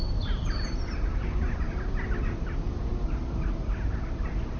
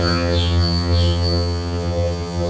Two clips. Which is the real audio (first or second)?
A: first